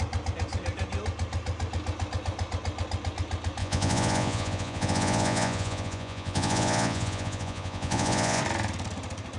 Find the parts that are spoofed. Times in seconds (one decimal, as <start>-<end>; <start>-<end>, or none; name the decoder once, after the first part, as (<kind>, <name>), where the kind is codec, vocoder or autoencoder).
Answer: 3.6-8.4 (vocoder, Vocos)